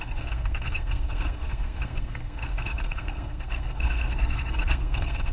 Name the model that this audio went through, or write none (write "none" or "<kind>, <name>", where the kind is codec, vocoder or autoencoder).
codec, SNAC